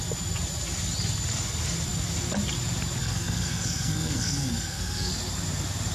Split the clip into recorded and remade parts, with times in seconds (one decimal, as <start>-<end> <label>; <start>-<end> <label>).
0.0-3.0 recorded; 3.0-5.1 remade; 5.1-5.9 recorded